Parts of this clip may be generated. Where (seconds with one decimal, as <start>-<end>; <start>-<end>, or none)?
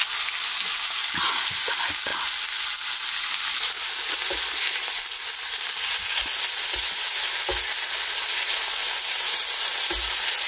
none